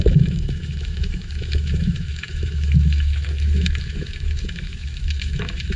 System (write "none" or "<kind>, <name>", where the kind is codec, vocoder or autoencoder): autoencoder, DAC-VAE